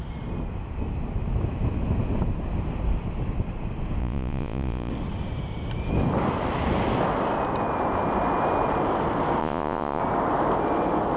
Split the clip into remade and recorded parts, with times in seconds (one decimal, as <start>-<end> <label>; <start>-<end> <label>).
0.0-4.0 recorded; 4.0-4.9 remade; 4.9-9.4 recorded; 9.4-10.0 remade; 10.0-11.2 recorded